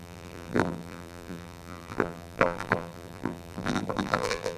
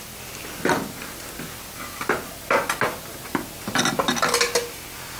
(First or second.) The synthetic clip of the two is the first